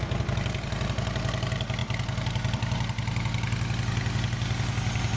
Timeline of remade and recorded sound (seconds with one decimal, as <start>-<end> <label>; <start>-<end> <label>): 0.0-5.2 recorded